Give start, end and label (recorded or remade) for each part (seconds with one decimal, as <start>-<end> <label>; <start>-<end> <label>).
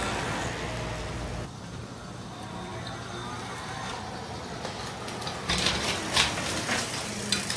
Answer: 0.0-7.6 recorded